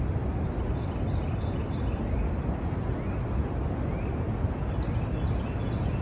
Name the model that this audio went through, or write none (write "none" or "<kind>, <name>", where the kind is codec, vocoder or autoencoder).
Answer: none